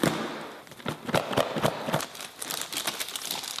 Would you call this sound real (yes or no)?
yes